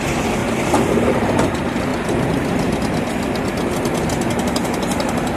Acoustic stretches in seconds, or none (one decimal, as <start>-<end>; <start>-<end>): 0.4-1.1; 1.9-5.4